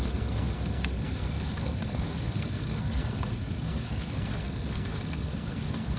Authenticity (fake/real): fake